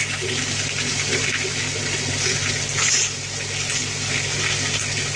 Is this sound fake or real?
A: real